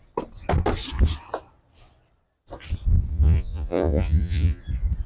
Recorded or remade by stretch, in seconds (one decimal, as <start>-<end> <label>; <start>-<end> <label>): 0.0-3.1 recorded; 3.1-4.6 remade; 4.6-5.1 recorded